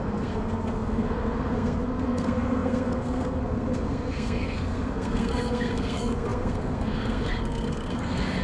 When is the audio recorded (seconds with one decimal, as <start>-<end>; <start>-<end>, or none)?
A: none